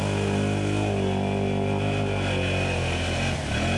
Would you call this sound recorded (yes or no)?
yes